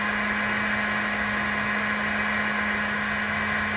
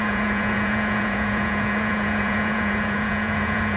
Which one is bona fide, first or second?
first